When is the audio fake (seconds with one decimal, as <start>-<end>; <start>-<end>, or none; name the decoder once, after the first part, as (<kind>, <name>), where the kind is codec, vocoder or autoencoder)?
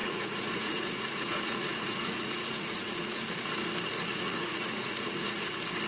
0.0-3.5 (vocoder, Vocos); 4.1-5.4